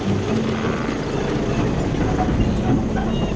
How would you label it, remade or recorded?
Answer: recorded